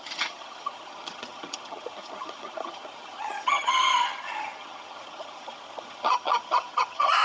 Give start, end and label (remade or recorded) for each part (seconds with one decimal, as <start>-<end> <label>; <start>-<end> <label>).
0.0-7.2 remade